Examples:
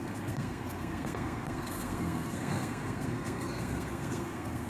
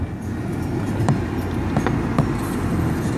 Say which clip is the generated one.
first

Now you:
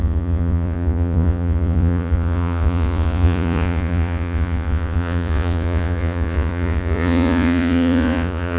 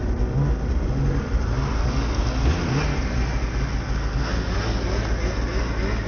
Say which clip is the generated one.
first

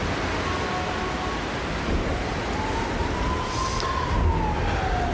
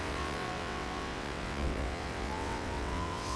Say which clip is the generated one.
second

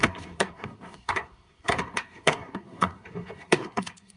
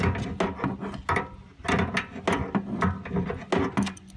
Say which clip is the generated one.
first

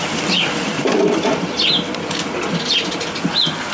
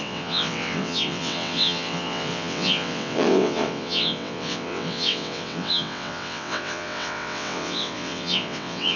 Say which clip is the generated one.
second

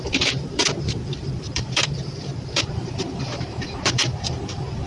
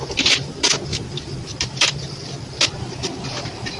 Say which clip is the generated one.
first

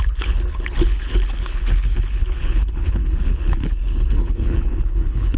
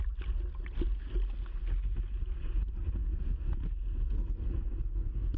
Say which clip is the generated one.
first